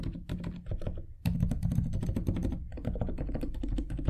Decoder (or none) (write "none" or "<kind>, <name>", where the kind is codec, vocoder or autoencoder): none